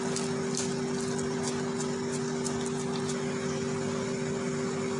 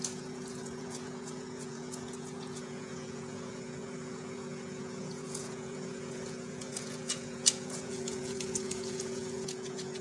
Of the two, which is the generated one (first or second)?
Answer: second